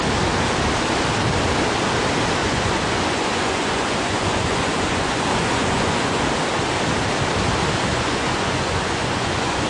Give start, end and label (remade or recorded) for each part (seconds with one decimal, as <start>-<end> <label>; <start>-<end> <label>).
0.0-2.4 recorded; 2.4-6.2 remade; 6.2-7.9 recorded; 7.9-9.7 remade